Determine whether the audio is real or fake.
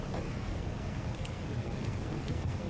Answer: fake